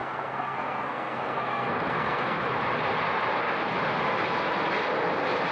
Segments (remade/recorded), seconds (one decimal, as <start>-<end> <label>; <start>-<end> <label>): 0.0-2.4 remade; 2.4-5.5 recorded